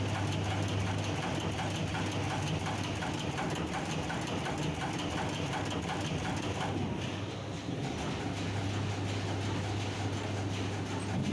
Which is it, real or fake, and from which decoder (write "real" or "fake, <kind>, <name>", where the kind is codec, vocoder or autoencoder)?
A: real